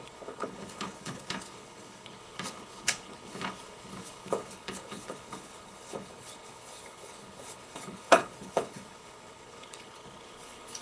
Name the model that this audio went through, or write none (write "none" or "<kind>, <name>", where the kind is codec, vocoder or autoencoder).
codec, HILCodec